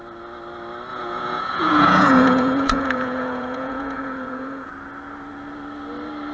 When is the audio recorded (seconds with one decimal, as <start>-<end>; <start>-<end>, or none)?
0.0-0.9; 4.7-6.3